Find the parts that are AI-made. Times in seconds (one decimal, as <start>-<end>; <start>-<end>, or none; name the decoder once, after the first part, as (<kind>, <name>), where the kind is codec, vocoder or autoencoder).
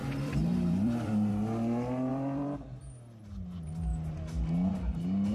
0.0-1.3 (vocoder, BigVGAN v2); 2.1-2.8